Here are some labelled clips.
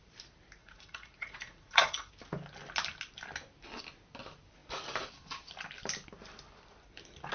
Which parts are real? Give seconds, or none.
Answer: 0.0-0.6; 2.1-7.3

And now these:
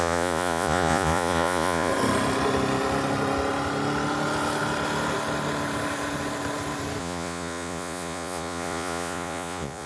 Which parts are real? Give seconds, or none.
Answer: 1.9-7.0

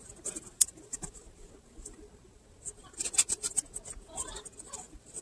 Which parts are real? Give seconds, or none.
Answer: 0.0-5.2

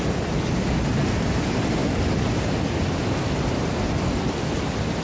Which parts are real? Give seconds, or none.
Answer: 0.0-5.0

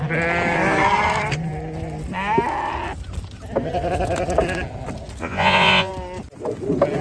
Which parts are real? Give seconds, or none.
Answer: 0.0-5.2; 5.9-7.0

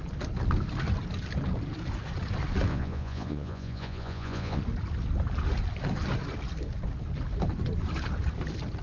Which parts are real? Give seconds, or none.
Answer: 0.0-2.7; 4.6-8.8